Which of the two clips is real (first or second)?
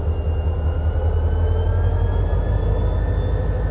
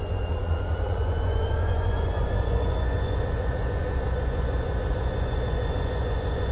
first